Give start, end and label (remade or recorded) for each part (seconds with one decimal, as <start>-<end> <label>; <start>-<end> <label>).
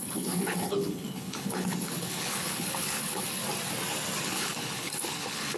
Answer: 0.0-3.4 remade; 3.4-4.2 recorded; 4.2-5.6 remade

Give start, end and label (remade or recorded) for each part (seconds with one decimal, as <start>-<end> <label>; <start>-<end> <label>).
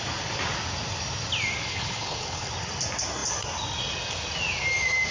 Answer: 0.0-1.7 recorded; 1.7-2.5 remade; 2.5-5.1 recorded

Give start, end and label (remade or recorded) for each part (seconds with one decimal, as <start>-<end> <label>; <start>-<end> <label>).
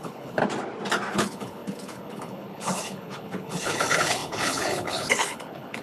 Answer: 0.0-0.4 remade; 0.4-1.1 recorded; 1.1-5.8 remade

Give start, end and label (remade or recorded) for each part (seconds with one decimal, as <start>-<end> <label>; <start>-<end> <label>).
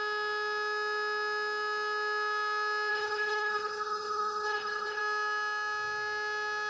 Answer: 0.0-2.9 recorded; 2.9-5.0 remade; 5.0-6.7 recorded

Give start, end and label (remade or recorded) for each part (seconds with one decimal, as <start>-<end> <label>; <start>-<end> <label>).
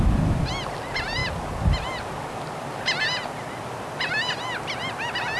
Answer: 0.0-5.4 recorded